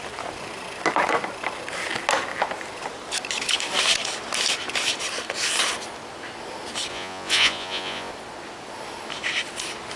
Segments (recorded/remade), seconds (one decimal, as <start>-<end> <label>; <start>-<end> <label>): 0.0-6.9 recorded; 6.9-8.1 remade; 8.1-10.0 recorded